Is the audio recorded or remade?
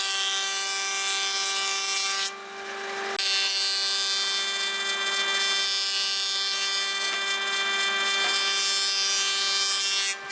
recorded